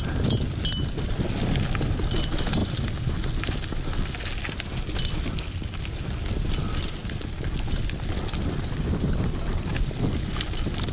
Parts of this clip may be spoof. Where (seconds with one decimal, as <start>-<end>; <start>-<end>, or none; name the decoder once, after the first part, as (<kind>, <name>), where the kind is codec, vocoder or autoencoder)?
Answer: none